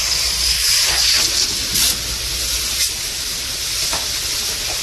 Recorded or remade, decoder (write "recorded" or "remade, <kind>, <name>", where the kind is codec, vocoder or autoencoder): recorded